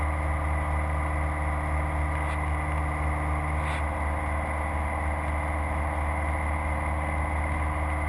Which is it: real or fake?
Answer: real